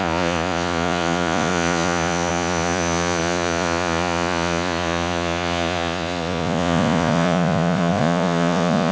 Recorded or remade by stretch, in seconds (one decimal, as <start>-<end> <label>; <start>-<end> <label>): 0.0-8.9 remade

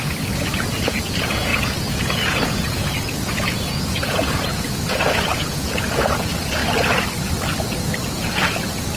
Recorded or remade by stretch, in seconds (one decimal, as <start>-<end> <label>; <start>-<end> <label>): 0.0-6.6 remade; 6.6-8.1 recorded; 8.1-9.0 remade

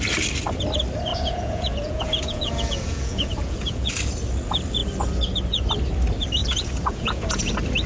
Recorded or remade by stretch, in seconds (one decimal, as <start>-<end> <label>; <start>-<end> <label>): 0.0-1.1 recorded; 1.1-3.9 remade; 3.9-6.4 recorded; 6.4-7.4 remade; 7.4-7.9 recorded